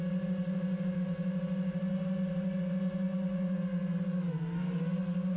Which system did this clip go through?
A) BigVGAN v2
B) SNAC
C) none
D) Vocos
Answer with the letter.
C